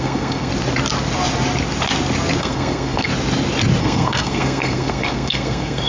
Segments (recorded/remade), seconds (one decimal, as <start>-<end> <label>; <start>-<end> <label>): 0.0-0.5 remade; 0.5-2.4 recorded; 2.4-3.1 remade; 3.1-3.8 recorded; 3.8-5.9 remade